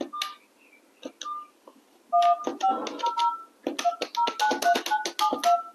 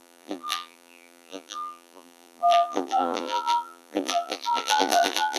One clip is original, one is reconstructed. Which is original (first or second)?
first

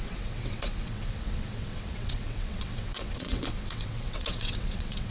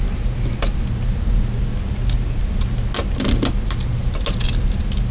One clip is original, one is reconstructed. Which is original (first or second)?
second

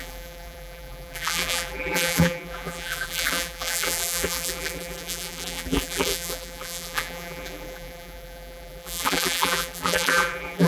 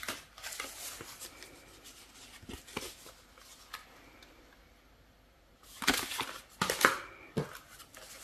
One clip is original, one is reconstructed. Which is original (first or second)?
second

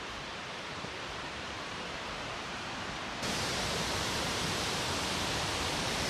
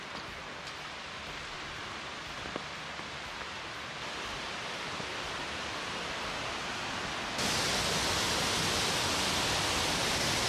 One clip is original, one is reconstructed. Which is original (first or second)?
second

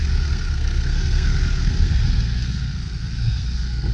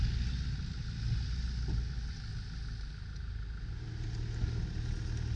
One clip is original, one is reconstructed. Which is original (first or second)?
second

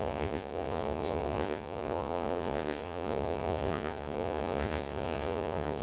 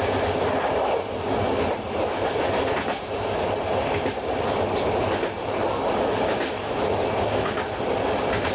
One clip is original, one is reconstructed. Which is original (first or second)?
second